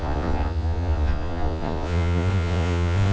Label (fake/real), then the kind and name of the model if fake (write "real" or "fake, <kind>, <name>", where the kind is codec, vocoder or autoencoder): fake, vocoder, Vocos